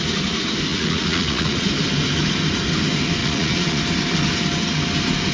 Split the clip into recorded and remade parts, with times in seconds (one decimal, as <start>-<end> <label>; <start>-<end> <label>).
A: 0.0-0.7 recorded; 0.7-1.7 remade; 1.7-3.2 recorded; 3.2-3.8 remade; 3.8-5.3 recorded